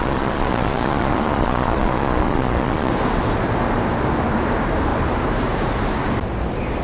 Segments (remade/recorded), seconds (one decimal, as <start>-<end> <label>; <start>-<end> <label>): 0.0-2.9 remade; 2.9-6.8 recorded